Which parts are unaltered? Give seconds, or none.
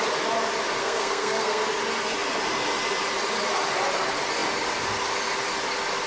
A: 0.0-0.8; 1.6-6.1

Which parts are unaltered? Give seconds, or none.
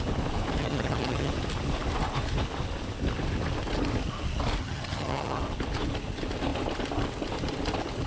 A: 0.0-0.6; 1.3-4.6; 5.4-8.1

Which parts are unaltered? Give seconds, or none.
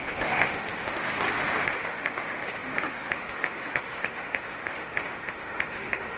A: none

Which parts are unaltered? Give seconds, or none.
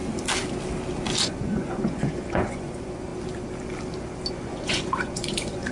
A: 0.0-1.2; 3.1-4.3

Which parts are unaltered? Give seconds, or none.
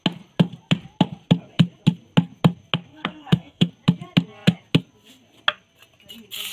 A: 0.0-2.9; 3.7-6.5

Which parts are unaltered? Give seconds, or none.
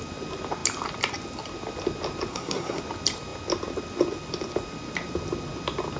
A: 0.0-2.3; 2.8-6.0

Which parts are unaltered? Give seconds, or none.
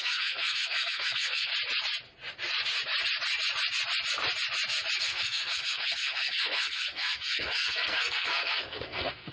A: 1.5-5.0